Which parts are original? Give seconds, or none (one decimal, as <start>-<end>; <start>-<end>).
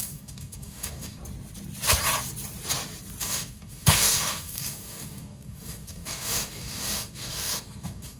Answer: 1.2-3.2